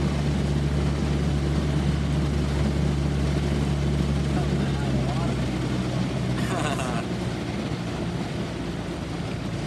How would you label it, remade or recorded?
recorded